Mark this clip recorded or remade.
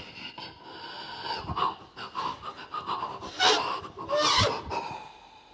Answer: recorded